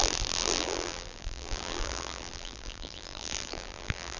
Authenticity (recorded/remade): remade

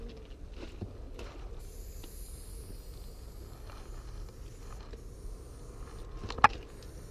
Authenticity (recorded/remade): recorded